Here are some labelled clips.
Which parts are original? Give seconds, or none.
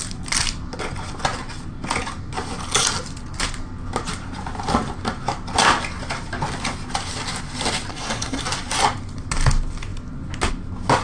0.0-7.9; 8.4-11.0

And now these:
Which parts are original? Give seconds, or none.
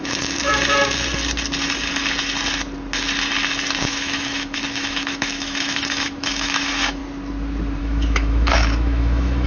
0.5-3.8; 7.0-7.8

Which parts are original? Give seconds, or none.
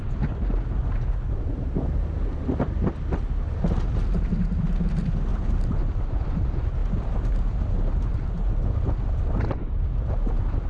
0.0-5.3; 5.8-10.7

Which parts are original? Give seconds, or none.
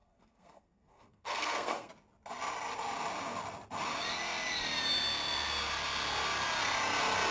1.9-7.3